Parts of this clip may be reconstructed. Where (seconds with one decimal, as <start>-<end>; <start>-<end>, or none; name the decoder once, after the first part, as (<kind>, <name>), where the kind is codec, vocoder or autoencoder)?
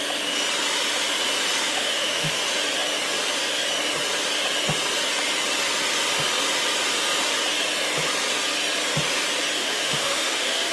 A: 1.7-2.4 (autoencoder, DAC-VAE); 9.6-10.7